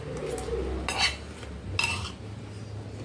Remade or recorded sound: recorded